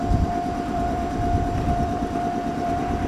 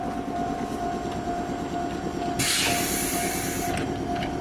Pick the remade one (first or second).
first